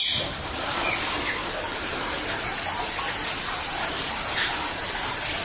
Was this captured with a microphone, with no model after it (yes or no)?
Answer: yes